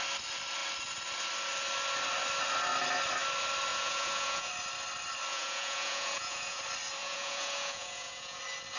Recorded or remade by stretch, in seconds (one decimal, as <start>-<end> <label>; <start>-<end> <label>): 0.0-3.7 recorded; 3.7-4.5 remade; 4.5-5.3 recorded; 5.3-6.6 remade; 6.6-7.0 recorded; 7.0-8.4 remade; 8.4-8.8 recorded

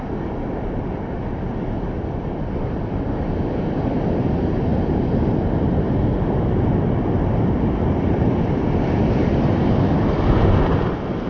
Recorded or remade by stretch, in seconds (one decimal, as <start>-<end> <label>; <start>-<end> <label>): 0.0-11.3 recorded

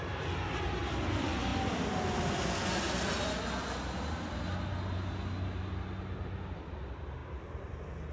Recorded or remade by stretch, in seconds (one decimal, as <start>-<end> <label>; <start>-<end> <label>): 0.0-8.1 recorded

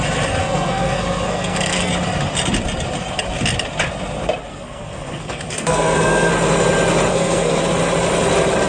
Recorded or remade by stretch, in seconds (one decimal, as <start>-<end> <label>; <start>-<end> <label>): 0.0-0.4 recorded; 0.4-1.9 remade; 1.9-4.5 recorded; 4.5-6.3 remade; 6.3-7.1 recorded; 7.1-7.6 remade; 7.6-8.7 recorded

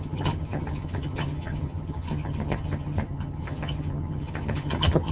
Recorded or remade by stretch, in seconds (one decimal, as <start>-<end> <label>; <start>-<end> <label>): 0.0-5.1 remade